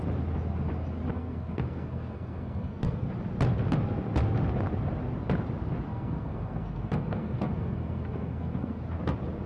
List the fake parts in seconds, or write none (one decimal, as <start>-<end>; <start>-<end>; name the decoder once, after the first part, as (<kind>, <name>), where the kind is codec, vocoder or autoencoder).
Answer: 1.1-3.1 (codec, SNAC); 5.9-8.8